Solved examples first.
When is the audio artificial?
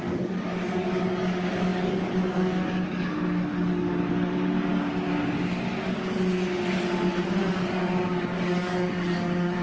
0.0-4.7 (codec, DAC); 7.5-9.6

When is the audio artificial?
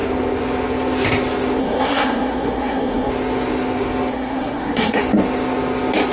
1.6-3.1 (codec, SNAC); 4.1-5.0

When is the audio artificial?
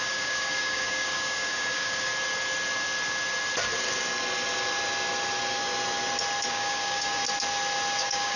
0.0-2.1 (codec, DAC); 6.5-7.2; 8.0-8.4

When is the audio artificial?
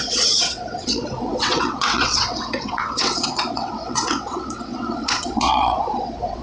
0.0-6.4 (vocoder, WaveNeXt)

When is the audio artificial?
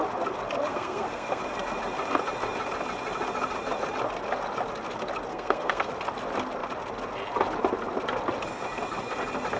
0.7-1.4 (codec, SNAC); 5.3-5.9